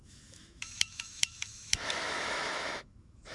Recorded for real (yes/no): no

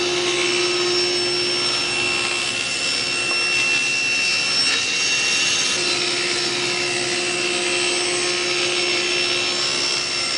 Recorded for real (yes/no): yes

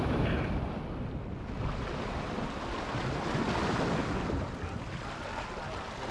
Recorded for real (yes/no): yes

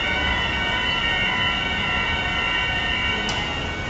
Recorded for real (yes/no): yes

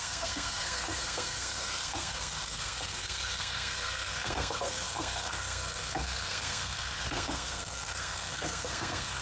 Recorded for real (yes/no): no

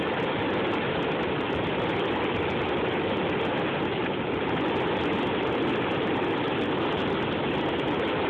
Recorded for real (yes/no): yes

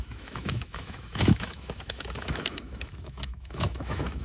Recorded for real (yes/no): no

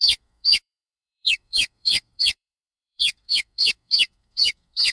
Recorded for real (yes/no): no